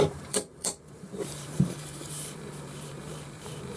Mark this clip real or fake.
fake